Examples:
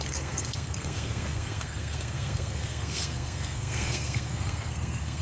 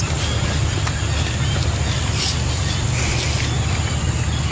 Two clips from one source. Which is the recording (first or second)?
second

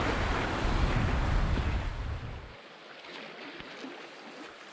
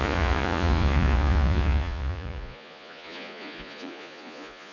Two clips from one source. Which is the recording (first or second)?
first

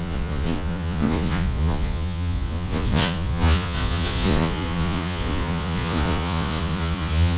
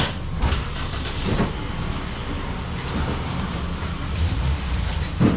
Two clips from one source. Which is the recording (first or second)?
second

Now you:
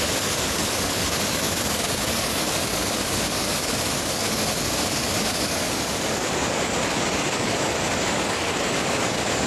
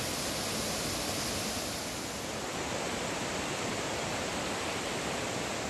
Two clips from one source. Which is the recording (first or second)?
second